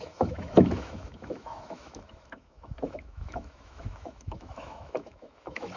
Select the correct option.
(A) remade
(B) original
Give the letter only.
A